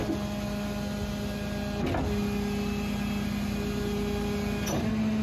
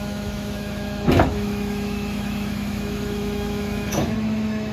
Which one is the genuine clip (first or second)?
first